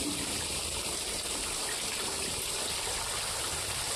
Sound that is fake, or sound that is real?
real